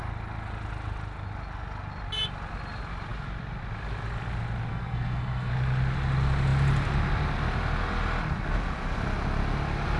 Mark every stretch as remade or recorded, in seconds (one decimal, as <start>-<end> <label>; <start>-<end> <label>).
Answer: 0.0-4.7 recorded; 4.7-5.5 remade; 5.5-10.0 recorded